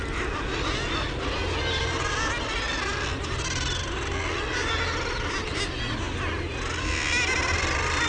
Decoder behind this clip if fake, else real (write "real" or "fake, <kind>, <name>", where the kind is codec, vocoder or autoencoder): real